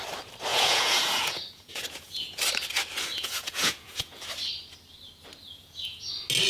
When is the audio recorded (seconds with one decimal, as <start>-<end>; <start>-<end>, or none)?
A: 0.0-0.5; 2.4-3.1; 4.2-5.4; 6.1-6.5